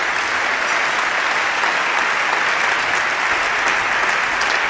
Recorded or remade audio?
recorded